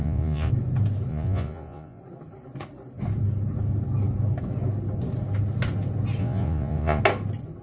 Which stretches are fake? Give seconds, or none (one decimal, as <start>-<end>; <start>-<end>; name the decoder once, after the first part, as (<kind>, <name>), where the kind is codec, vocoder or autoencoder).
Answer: 0.0-0.5 (vocoder, Vocos); 1.1-2.0; 6.2-7.0

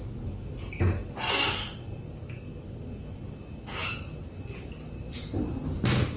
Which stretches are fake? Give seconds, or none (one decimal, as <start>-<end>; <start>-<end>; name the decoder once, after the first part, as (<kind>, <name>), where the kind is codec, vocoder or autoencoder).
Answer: none

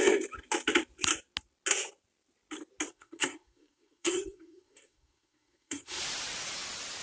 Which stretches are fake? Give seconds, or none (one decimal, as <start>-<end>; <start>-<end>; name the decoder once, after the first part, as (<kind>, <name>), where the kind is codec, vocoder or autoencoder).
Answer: 2.9-6.0 (codec, SNAC)

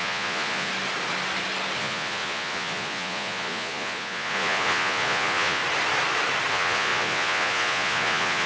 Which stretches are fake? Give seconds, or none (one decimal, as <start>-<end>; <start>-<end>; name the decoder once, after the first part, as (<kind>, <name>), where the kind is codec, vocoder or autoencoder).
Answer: 0.0-0.7 (vocoder, Vocos); 1.8-5.6; 6.5-8.5

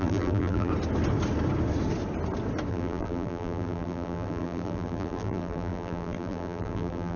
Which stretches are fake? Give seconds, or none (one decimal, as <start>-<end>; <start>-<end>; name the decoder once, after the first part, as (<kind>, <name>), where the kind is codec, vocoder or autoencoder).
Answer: 0.0-0.7 (vocoder, BigVGAN v2); 2.7-7.2

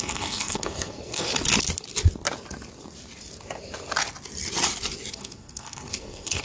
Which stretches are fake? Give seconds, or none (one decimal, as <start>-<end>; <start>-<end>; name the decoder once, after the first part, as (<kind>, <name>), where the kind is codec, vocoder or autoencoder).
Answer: 0.0-1.3 (codec, SNAC); 5.1-6.4

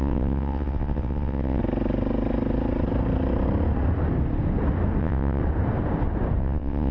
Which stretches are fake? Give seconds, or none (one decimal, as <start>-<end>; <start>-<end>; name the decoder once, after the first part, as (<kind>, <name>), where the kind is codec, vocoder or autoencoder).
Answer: 0.0-1.6 (vocoder, WaveNeXt); 5.0-5.4; 6.4-6.9

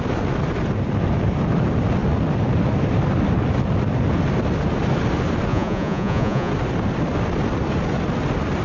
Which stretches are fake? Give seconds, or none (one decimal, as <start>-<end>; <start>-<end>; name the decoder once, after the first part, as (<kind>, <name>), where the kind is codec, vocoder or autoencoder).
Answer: 5.5-6.5 (vocoder, Vocos)